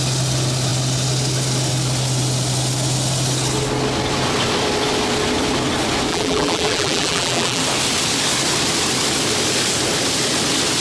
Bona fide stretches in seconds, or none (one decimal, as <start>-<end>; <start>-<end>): 0.0-6.1; 7.6-10.8